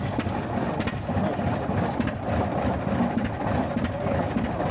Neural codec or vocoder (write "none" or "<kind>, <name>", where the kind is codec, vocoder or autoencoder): vocoder, BigVGAN v2